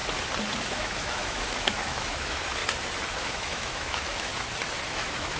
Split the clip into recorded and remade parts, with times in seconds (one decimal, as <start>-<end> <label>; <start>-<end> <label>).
0.0-0.6 recorded; 0.6-2.6 remade; 2.6-3.2 recorded; 3.2-4.3 remade; 4.3-4.9 recorded; 4.9-5.4 remade